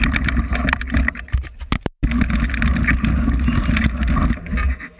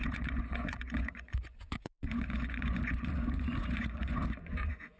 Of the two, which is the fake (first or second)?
second